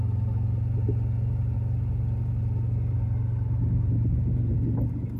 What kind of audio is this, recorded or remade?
recorded